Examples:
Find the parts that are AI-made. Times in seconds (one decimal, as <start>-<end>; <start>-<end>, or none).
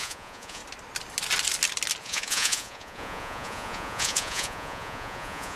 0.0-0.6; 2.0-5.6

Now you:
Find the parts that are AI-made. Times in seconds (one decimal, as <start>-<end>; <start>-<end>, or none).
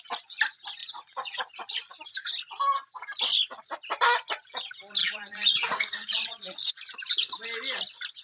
0.8-1.5; 5.0-6.7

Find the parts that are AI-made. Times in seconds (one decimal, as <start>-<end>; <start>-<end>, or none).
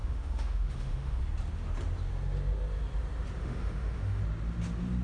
0.0-1.2; 3.4-4.2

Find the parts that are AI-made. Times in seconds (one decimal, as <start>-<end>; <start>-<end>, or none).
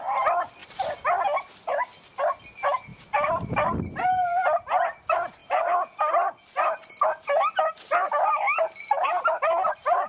none